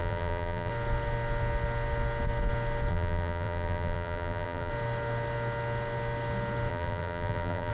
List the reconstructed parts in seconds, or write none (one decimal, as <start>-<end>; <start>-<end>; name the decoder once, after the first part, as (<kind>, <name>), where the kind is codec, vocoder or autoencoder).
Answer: 0.0-0.7 (vocoder, BigVGAN v2); 2.9-4.7; 6.7-7.7